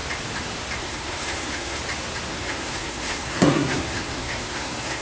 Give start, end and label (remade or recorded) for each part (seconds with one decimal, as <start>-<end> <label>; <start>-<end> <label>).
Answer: 0.0-0.8 recorded; 0.8-1.8 remade; 1.8-2.3 recorded; 2.3-5.0 remade